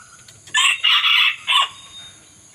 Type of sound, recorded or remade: recorded